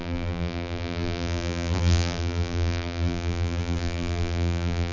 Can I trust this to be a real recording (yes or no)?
no